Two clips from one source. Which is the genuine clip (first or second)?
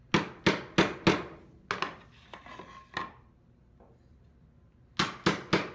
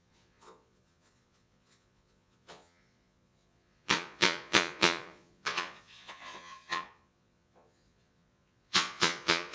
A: first